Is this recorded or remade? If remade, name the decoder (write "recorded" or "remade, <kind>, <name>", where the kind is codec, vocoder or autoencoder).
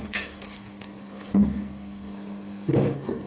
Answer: remade, codec, SNAC